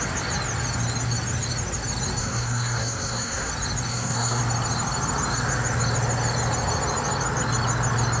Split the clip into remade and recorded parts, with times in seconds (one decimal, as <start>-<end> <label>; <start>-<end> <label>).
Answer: 0.0-2.2 recorded; 2.2-3.5 remade; 3.5-3.9 recorded; 3.9-4.4 remade; 4.4-8.2 recorded